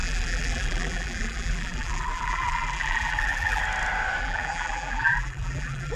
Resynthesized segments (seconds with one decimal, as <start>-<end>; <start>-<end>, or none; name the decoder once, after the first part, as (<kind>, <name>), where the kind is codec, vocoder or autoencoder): 0.0-3.6 (vocoder, BigVGAN v2); 4.2-6.0